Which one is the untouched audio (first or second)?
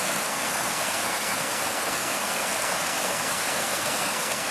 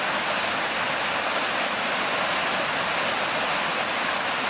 second